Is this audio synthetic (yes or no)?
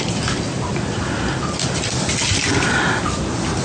no